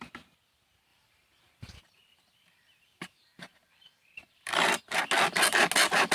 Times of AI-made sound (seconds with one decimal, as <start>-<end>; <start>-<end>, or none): 0.9-4.6